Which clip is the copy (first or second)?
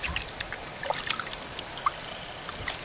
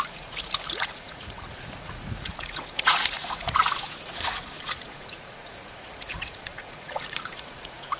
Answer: second